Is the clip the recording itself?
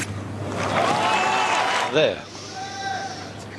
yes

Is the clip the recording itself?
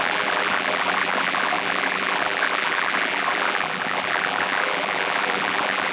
no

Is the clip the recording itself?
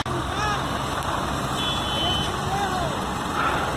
yes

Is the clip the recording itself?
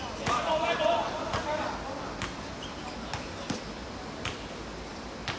yes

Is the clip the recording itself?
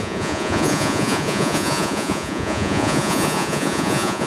no